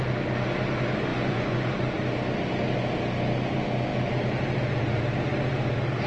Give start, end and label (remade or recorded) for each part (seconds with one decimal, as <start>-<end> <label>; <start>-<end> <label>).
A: 0.0-1.1 recorded; 1.1-1.7 remade; 1.7-6.1 recorded